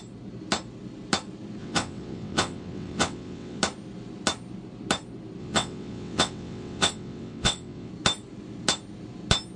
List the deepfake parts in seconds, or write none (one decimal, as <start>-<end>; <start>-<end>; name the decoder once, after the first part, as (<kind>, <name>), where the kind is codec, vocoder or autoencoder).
1.6-3.6 (vocoder, WaveNeXt); 5.4-7.9